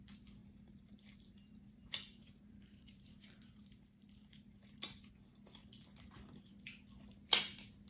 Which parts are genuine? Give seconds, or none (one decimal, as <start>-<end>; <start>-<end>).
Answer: 0.0-0.4; 5.1-5.6; 6.5-7.9